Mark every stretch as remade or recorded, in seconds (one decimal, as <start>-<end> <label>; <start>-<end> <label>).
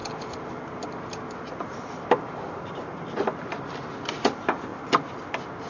0.0-5.7 recorded